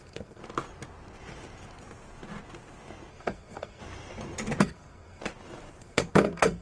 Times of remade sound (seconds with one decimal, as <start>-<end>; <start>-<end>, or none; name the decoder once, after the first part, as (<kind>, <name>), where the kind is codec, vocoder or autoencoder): 0.0-0.4 (codec, SNAC); 3.1-3.8; 4.6-5.2; 5.8-6.6